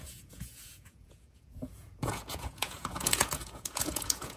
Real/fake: fake